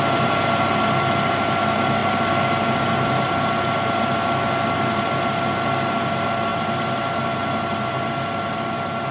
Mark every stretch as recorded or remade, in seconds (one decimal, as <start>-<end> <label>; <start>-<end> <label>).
0.0-9.1 recorded